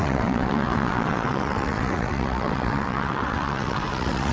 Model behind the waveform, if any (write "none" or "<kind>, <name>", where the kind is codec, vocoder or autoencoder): vocoder, WaveNeXt